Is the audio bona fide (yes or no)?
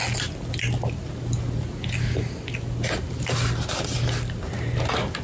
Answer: yes